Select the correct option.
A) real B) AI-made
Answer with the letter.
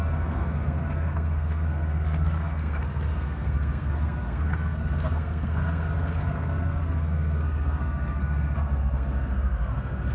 B